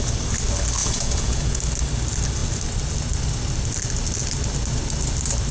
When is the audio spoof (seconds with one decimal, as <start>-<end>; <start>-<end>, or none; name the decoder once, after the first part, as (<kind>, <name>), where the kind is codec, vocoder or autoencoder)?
0.8-1.6 (vocoder, Vocos)